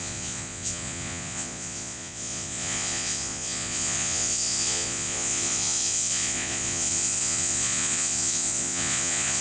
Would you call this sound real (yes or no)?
no